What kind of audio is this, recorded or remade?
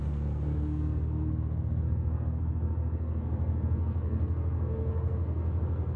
remade